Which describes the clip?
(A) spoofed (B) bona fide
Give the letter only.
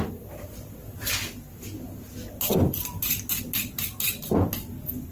B